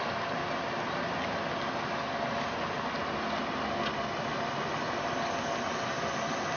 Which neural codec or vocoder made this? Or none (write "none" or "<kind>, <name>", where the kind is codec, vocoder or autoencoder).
none